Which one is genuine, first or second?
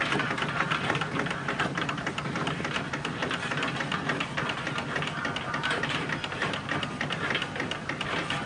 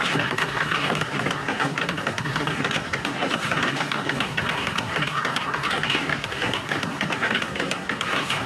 first